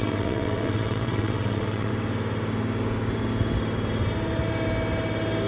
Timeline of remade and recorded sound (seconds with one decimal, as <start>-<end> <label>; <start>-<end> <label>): 0.0-1.9 remade; 1.9-5.5 recorded